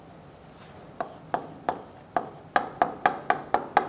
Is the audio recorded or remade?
recorded